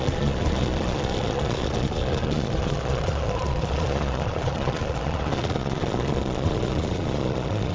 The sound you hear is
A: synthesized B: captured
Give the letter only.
A